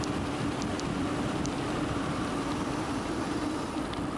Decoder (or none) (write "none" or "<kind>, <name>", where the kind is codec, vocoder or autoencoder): none